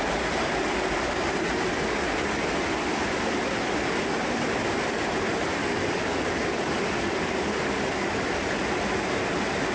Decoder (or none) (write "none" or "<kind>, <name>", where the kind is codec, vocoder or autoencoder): none